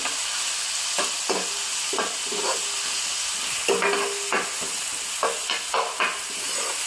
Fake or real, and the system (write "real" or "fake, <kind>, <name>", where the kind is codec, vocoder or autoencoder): real